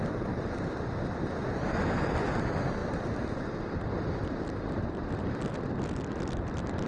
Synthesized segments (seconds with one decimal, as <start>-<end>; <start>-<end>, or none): none